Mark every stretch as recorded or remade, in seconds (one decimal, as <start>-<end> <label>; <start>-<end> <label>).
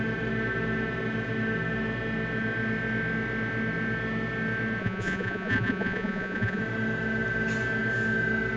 0.0-4.8 recorded; 4.8-6.6 remade; 6.6-8.6 recorded